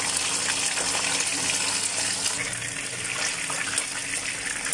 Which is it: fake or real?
real